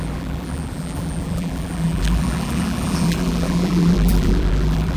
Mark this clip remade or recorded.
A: remade